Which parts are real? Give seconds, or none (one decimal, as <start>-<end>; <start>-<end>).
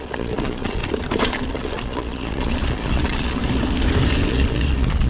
0.8-1.3; 3.4-4.3